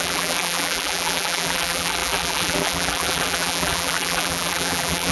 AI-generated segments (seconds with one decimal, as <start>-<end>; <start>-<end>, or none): 0.0-5.1